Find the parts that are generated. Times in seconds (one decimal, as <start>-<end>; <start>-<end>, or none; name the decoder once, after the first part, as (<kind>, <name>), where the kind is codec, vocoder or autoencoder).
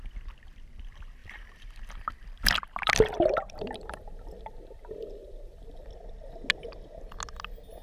1.2-5.9 (vocoder, BigVGAN v2)